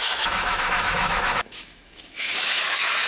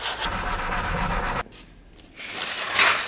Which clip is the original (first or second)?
second